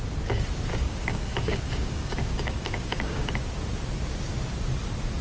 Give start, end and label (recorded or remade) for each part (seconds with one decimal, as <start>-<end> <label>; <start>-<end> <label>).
0.0-0.7 recorded; 0.7-3.3 remade; 3.3-5.2 recorded

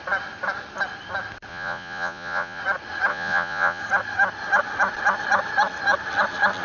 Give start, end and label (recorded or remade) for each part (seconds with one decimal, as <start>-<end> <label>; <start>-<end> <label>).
0.0-1.5 recorded; 1.5-2.6 remade; 2.6-3.1 recorded; 3.1-3.8 remade; 3.8-6.6 recorded

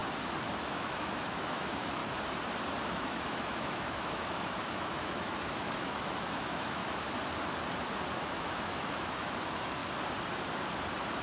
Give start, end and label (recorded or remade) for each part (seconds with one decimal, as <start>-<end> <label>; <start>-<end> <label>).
0.0-0.6 recorded; 0.6-2.0 remade; 2.0-2.9 recorded; 2.9-6.8 remade; 6.8-8.1 recorded; 8.1-9.8 remade; 9.8-11.2 recorded

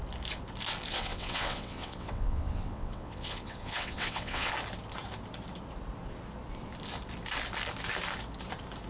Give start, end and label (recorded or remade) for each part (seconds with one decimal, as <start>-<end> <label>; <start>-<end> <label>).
0.0-0.9 recorded; 0.9-4.5 remade; 4.5-8.9 recorded

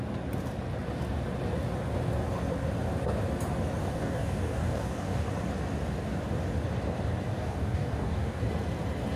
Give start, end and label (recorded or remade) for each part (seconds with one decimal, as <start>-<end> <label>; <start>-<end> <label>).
0.0-3.8 recorded; 3.8-5.3 remade; 5.3-7.3 recorded; 7.3-8.4 remade; 8.4-9.2 recorded

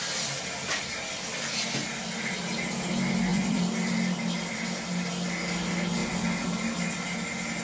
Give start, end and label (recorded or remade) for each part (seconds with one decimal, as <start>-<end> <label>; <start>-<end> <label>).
0.0-3.3 recorded; 3.3-5.1 remade; 5.1-7.6 recorded

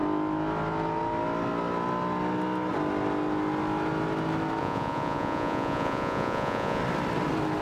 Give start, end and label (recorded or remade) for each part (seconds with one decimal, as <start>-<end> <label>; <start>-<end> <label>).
0.0-4.6 recorded; 4.6-6.8 remade; 6.8-7.6 recorded